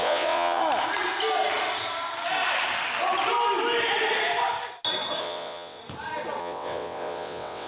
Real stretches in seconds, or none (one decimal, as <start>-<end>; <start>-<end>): 0.6-5.2; 5.8-6.4